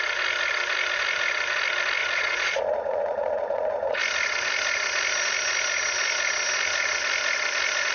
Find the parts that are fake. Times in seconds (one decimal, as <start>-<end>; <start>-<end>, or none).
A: 2.0-4.0